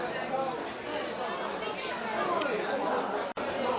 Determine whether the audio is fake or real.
real